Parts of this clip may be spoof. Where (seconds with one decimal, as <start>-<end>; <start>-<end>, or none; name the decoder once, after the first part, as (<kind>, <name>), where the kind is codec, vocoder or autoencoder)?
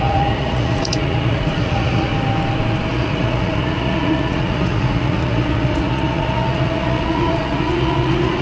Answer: 0.0-2.1 (vocoder, Vocos); 2.9-8.4